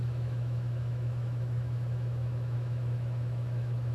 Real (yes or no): no